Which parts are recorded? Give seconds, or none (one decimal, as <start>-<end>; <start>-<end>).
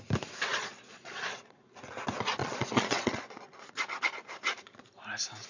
0.0-0.5; 1.6-2.4; 3.7-5.5